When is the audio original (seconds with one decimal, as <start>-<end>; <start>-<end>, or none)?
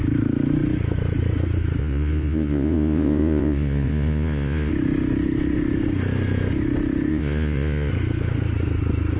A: 0.0-1.8; 4.7-7.1; 7.9-9.2